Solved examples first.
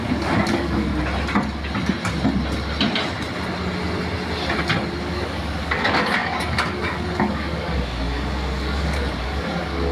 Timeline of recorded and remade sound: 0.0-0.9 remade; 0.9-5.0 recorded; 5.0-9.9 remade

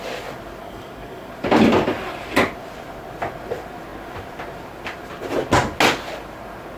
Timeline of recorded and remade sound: 0.0-0.6 recorded; 0.6-1.3 remade; 1.3-6.8 recorded

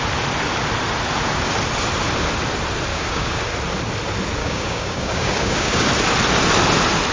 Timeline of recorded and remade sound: 0.0-2.9 recorded; 2.9-3.5 remade; 3.5-4.4 recorded; 4.4-5.9 remade; 5.9-7.1 recorded